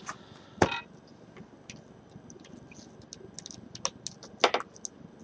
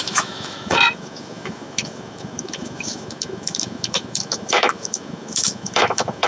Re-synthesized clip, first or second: second